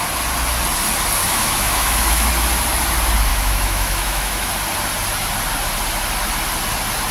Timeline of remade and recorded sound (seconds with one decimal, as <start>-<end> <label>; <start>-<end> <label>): 0.0-1.2 recorded; 1.2-2.3 remade; 2.3-3.3 recorded; 3.3-4.5 remade; 4.5-7.1 recorded